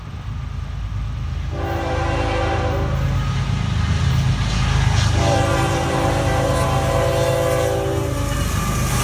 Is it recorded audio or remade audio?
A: recorded